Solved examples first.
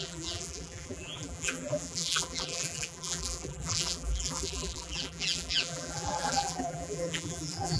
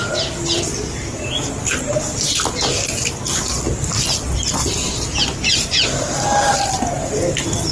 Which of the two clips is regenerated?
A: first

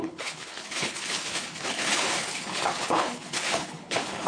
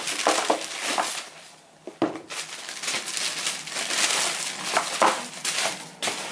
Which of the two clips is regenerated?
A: first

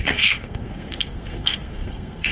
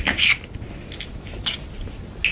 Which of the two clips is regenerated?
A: first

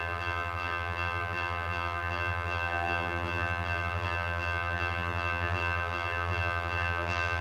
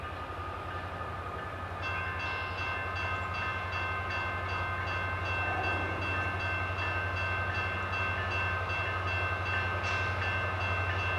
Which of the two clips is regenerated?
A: first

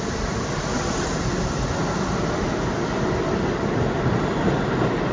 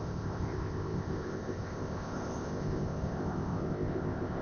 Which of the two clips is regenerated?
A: second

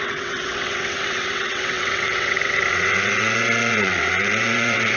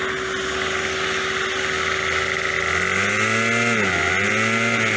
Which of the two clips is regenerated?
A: first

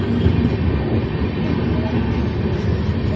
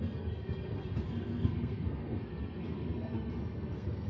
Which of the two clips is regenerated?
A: second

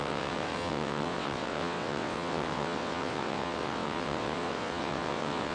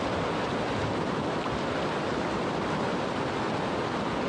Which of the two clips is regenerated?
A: first